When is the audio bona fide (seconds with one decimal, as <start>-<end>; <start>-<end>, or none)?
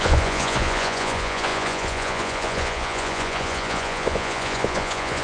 none